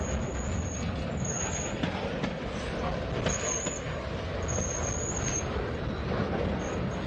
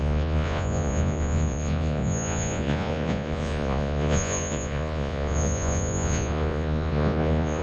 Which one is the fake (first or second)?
second